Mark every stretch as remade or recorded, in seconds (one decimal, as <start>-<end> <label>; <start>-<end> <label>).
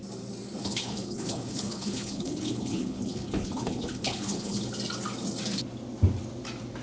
0.0-0.6 recorded; 0.6-4.7 remade; 4.7-6.8 recorded